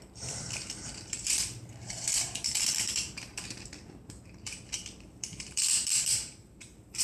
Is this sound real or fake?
fake